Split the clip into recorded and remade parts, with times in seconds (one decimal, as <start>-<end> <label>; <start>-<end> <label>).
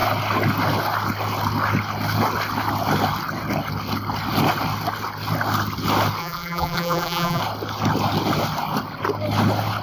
0.0-6.2 recorded; 6.2-7.4 remade; 7.4-9.8 recorded